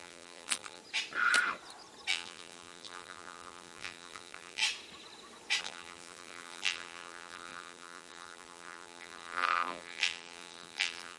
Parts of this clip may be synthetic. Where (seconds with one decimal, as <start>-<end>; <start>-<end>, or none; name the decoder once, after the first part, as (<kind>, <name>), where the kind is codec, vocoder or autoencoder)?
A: 0.0-0.8 (vocoder, BigVGAN v2); 2.1-4.6; 5.6-11.2